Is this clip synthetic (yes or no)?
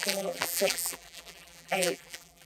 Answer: yes